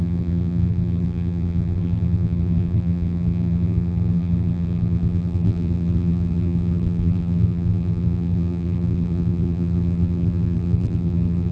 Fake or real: fake